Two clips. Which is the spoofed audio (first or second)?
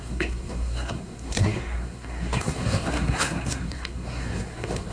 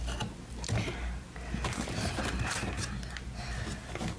first